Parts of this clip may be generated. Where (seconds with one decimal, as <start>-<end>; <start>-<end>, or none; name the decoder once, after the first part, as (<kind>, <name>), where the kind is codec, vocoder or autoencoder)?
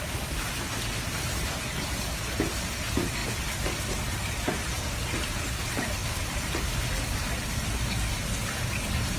none